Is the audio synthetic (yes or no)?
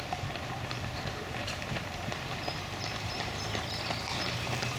yes